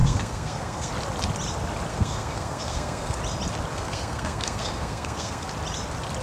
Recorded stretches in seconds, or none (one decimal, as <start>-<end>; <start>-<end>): 0.9-1.9; 3.2-3.7; 5.5-6.2